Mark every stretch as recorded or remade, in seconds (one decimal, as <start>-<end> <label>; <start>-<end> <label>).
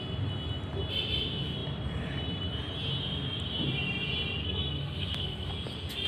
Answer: 0.0-4.4 recorded; 4.4-5.5 remade; 5.5-6.1 recorded